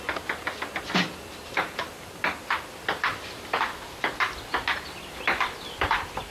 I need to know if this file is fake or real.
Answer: real